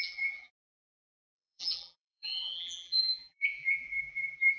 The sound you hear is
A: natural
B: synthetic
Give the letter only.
B